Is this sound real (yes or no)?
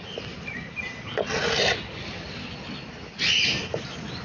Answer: yes